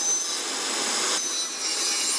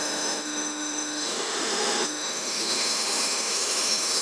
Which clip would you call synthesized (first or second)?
second